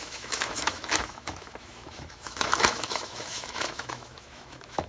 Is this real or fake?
fake